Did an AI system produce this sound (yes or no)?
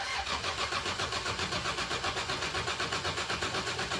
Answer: yes